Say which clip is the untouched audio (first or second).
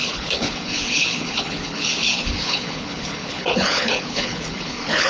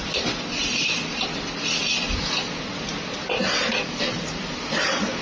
second